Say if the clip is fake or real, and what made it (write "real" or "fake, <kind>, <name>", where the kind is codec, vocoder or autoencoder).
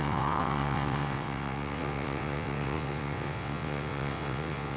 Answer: fake, vocoder, WaveNeXt